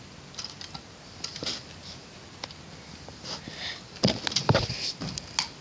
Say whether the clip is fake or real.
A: real